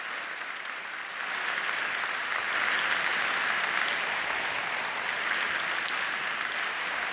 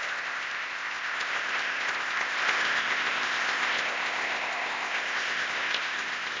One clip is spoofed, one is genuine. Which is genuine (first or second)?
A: first